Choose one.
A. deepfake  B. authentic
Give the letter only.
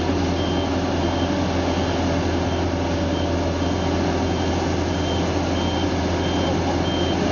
B